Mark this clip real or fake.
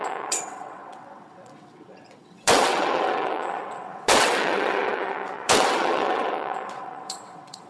fake